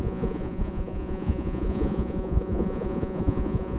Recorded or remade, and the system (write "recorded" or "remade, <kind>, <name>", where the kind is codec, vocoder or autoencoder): remade, vocoder, Vocos